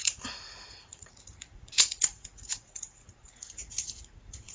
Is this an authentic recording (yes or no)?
no